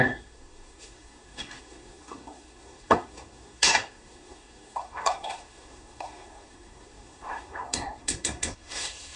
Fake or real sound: fake